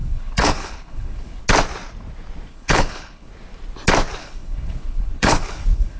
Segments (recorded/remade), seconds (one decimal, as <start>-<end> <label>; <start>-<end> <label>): 0.0-1.4 remade; 1.4-2.5 recorded; 2.5-3.3 remade; 3.3-4.2 recorded; 4.2-6.0 remade